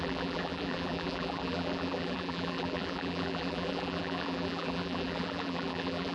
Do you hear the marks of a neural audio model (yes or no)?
yes